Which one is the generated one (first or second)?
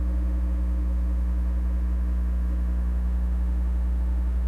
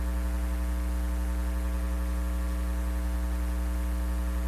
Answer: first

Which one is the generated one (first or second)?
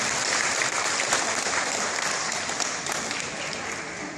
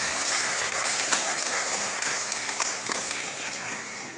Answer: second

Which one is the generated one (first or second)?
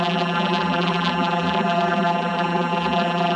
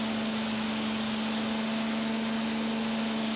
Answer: first